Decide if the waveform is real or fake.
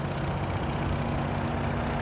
real